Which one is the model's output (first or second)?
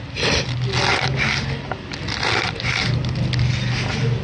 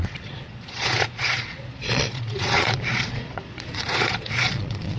second